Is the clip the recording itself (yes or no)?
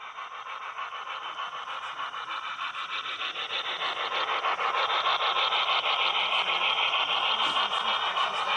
yes